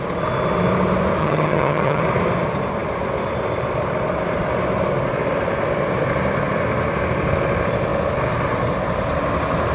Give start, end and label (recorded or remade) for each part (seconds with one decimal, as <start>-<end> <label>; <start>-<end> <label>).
0.0-1.2 recorded; 1.2-2.0 remade; 2.0-9.7 recorded

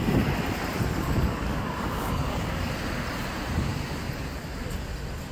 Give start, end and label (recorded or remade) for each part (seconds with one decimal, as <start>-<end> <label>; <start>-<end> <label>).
0.0-0.9 recorded; 0.9-2.7 remade; 2.7-5.3 recorded

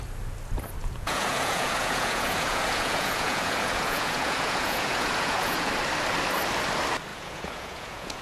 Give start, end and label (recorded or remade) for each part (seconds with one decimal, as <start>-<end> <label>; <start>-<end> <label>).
0.0-0.8 recorded; 0.8-5.7 remade; 5.7-7.1 recorded; 7.1-8.2 remade

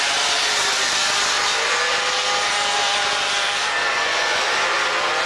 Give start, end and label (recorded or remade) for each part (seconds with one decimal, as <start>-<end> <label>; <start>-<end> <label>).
0.0-3.8 recorded; 3.8-4.4 remade; 4.4-5.3 recorded

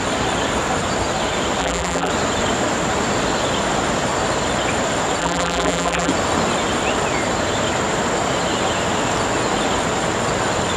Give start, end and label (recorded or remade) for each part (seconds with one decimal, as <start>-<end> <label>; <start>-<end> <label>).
0.0-1.6 recorded; 1.6-2.1 remade; 2.1-5.2 recorded; 5.2-6.1 remade; 6.1-10.8 recorded

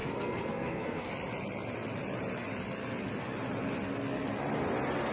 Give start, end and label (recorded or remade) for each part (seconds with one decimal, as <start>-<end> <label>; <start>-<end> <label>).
0.0-1.1 remade; 1.1-5.1 recorded

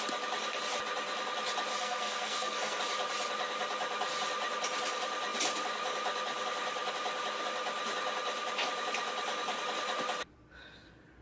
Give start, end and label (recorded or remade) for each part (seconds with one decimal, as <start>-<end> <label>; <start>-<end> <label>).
0.0-1.7 recorded; 1.7-2.8 remade; 2.8-11.2 recorded